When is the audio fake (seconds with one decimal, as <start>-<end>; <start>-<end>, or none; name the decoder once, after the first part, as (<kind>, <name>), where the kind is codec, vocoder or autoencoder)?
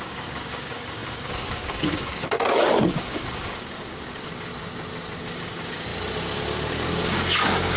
0.0-4.5 (codec, DAC); 5.2-5.9; 7.0-7.8